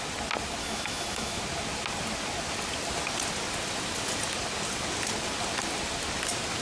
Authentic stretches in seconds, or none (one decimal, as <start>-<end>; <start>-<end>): 0.0-0.6; 1.4-6.6